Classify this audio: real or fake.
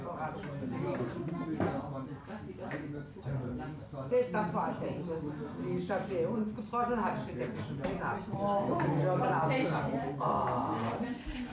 real